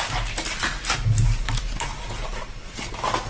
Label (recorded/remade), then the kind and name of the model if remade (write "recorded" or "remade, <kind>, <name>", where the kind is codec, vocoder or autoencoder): recorded